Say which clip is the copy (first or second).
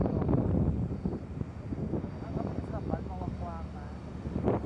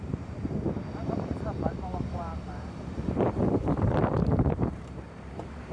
second